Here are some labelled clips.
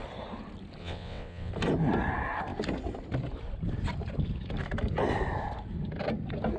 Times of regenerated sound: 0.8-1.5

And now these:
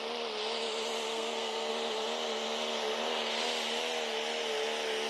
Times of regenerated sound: 1.1-1.7

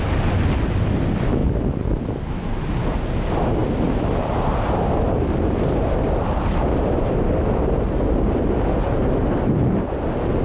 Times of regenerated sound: none

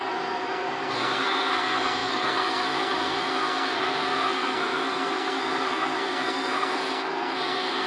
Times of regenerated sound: 0.0-7.9

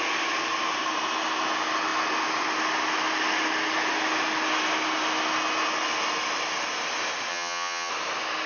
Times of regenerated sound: 7.3-7.9